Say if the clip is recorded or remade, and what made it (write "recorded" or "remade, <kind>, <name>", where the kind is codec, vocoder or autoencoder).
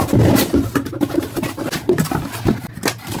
recorded